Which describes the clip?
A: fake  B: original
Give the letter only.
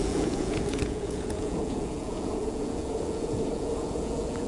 A